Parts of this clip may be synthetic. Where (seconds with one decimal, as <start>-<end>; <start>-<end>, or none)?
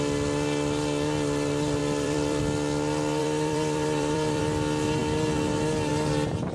1.8-2.4; 3.2-4.4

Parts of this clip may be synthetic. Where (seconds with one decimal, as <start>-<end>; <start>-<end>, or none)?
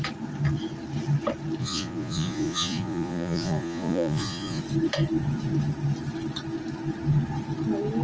1.6-4.6